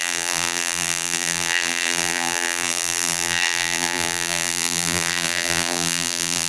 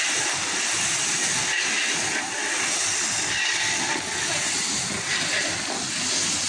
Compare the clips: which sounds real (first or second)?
second